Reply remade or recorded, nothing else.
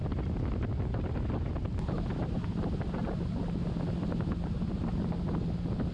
recorded